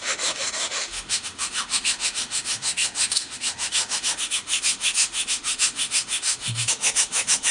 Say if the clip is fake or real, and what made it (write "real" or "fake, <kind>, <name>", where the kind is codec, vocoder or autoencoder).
fake, autoencoder, DAC-VAE